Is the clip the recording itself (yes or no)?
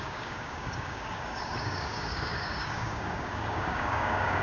no